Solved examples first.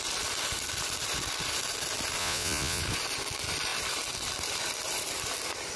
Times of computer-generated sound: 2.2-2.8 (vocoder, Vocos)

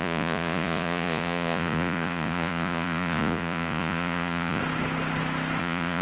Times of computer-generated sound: 0.0-4.6 (vocoder, Vocos); 5.6-6.0

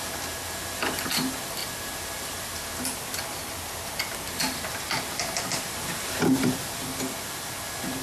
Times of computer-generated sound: none

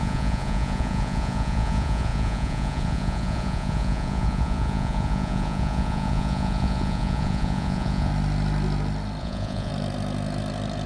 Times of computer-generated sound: 0.0-8.1 (vocoder, Vocos); 9.2-9.7

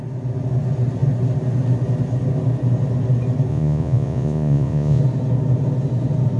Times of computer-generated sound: 3.5-5.0 (vocoder, Vocos)